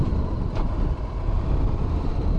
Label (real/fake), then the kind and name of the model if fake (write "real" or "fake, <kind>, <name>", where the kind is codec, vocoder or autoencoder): real